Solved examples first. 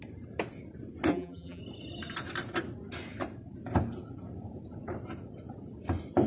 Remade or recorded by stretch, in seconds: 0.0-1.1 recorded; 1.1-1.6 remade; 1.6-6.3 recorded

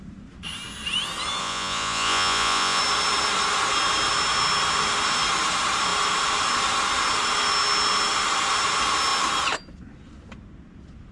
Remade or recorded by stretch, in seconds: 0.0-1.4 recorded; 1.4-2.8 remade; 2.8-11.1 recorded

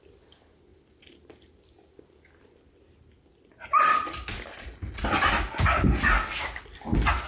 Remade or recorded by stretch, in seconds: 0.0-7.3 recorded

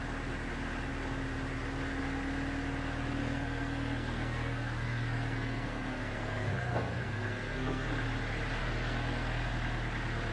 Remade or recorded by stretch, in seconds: 0.0-3.2 recorded; 3.2-7.9 remade; 7.9-8.6 recorded; 8.6-9.5 remade; 9.5-10.3 recorded

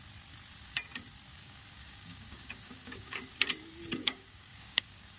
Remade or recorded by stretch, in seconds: 0.0-1.3 recorded; 1.3-3.2 remade; 3.2-4.0 recorded; 4.0-5.2 remade

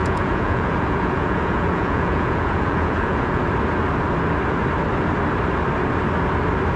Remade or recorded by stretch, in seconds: 0.0-3.4 remade; 3.4-6.8 recorded

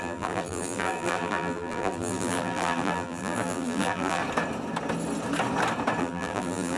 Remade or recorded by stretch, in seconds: 0.0-4.2 remade; 4.2-6.0 recorded; 6.0-6.8 remade